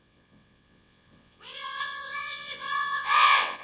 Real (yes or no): no